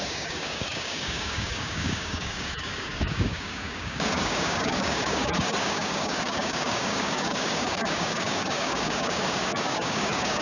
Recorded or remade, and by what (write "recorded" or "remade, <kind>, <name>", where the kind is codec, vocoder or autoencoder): remade, codec, DAC